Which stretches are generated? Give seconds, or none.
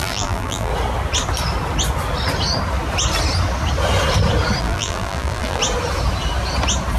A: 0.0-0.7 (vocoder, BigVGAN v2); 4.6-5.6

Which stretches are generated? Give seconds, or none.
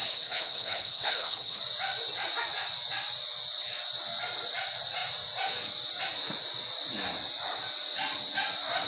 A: 0.0-1.6 (codec, HILCodec)